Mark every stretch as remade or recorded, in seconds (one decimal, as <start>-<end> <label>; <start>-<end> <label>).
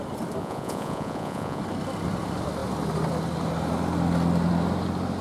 0.0-0.4 recorded; 0.4-1.6 remade; 1.6-5.2 recorded